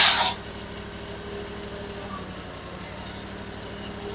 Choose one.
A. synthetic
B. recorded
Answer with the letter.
B